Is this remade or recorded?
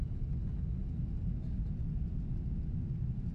recorded